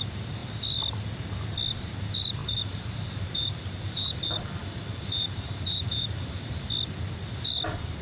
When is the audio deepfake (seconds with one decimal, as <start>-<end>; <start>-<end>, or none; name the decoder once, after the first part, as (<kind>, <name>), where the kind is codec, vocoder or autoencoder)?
2.4-6.7 (vocoder, BigVGAN v2)